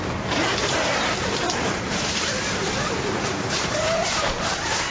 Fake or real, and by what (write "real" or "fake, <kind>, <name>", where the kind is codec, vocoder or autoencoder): fake, vocoder, BigVGAN v2